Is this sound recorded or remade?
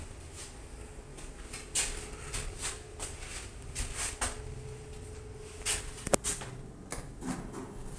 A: recorded